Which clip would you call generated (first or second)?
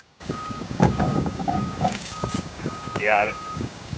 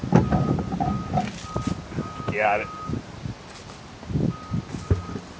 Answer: first